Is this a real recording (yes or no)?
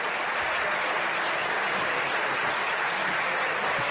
yes